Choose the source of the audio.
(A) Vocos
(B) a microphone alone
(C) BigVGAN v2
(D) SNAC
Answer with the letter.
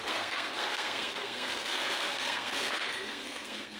D